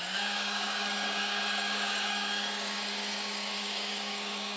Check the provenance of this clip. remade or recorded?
remade